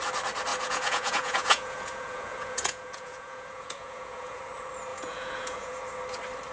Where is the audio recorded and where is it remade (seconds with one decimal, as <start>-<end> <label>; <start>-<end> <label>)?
0.0-0.5 recorded; 0.5-4.4 remade; 4.4-4.9 recorded; 4.9-5.8 remade; 5.8-6.5 recorded